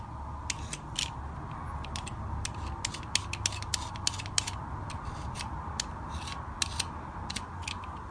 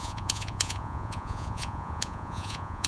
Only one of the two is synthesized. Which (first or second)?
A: second